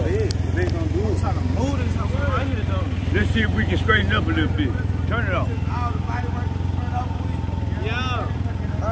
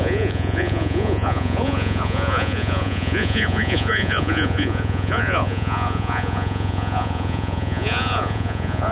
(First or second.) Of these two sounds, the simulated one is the second